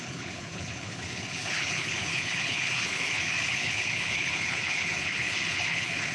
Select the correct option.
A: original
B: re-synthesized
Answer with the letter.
B